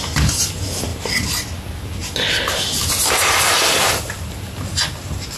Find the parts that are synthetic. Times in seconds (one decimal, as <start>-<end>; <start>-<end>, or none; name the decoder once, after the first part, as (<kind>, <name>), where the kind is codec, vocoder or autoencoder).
none